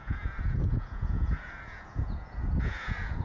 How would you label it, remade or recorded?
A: remade